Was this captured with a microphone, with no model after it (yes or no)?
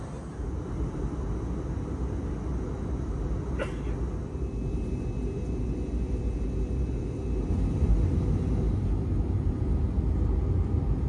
yes